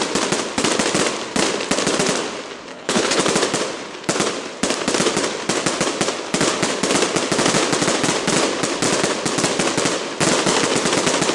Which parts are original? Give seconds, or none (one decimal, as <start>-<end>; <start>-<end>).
0.0-2.7; 3.2-11.3